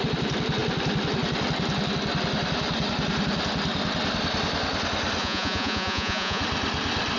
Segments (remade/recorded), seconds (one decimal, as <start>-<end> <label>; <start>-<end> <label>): 0.0-5.2 recorded; 5.2-6.4 remade; 6.4-7.2 recorded